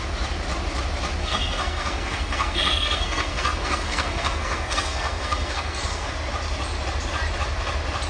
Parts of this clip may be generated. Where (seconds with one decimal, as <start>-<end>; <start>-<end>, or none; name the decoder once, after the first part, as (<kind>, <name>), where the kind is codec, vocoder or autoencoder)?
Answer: 1.2-6.1 (codec, SNAC)